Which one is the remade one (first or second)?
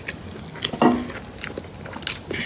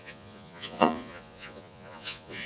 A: second